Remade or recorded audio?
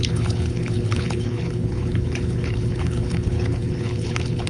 remade